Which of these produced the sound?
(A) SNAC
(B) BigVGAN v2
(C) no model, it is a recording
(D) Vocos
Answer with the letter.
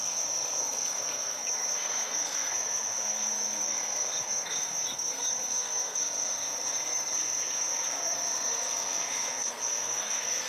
A